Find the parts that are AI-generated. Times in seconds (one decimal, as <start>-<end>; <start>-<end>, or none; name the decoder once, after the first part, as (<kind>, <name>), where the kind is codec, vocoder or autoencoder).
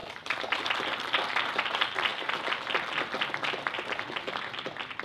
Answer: 0.0-0.7 (vocoder, BigVGAN v2)